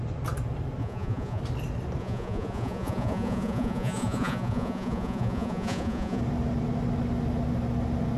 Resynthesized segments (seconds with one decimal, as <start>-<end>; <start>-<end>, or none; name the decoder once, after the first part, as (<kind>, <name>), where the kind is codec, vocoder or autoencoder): 0.8-1.4 (vocoder, Vocos); 2.0-6.2